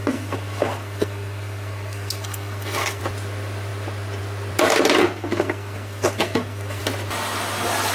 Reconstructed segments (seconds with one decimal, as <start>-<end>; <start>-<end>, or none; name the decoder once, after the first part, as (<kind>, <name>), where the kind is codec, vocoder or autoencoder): 0.0-3.0 (codec, SNAC); 5.0-6.8